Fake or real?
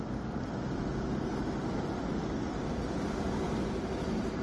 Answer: real